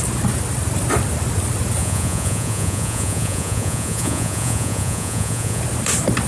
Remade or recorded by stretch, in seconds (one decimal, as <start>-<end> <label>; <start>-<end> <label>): 0.0-1.8 recorded; 1.8-5.6 remade; 5.6-6.3 recorded